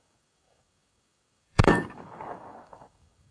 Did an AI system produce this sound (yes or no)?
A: yes